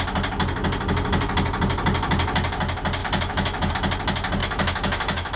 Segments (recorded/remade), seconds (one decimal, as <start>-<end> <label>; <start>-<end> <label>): 0.0-3.0 recorded; 3.0-3.7 remade; 3.7-4.4 recorded; 4.4-5.4 remade